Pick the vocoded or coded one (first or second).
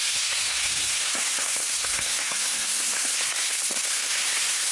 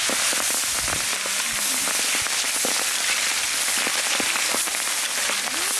first